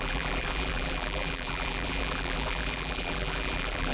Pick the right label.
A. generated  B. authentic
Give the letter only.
A